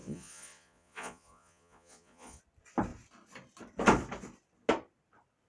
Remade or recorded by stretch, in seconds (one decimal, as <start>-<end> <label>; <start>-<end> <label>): 0.0-2.4 remade; 2.4-5.5 recorded